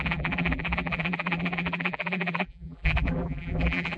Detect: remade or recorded remade